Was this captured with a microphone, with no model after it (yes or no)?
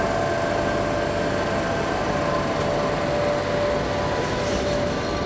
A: yes